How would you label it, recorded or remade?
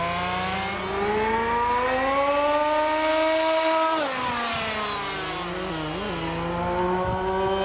recorded